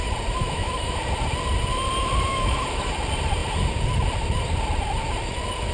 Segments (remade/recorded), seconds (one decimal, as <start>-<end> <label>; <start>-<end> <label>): 0.0-0.4 recorded; 0.4-1.0 remade; 1.0-2.3 recorded; 2.3-2.9 remade; 2.9-5.7 recorded